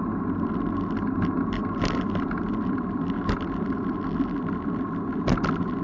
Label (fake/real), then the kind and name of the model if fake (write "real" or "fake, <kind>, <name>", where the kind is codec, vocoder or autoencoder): real